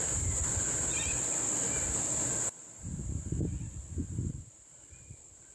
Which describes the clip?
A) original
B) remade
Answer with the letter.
A